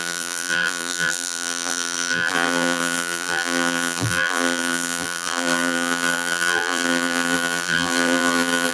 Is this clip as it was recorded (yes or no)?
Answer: no